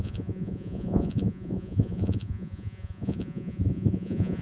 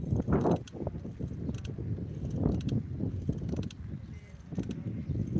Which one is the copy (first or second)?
first